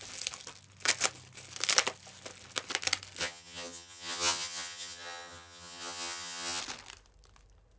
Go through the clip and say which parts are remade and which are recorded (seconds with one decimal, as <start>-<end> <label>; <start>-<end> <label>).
0.0-3.2 recorded; 3.2-6.6 remade; 6.6-7.8 recorded